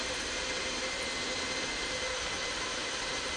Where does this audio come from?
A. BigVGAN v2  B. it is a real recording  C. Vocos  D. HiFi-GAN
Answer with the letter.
B